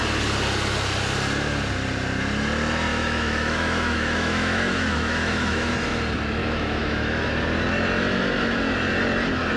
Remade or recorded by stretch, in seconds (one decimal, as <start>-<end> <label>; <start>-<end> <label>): 0.0-2.9 recorded; 2.9-5.7 remade; 5.7-6.4 recorded; 6.4-7.3 remade; 7.3-9.6 recorded